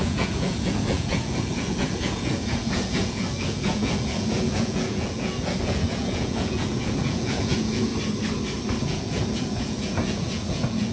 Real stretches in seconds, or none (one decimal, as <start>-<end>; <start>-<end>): 7.9-8.8